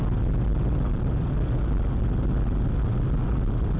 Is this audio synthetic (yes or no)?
no